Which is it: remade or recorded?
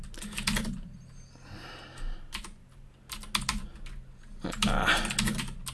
recorded